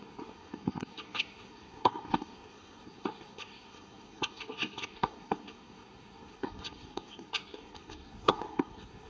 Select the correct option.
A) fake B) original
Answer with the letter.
A